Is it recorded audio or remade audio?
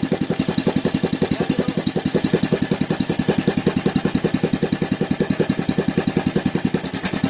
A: recorded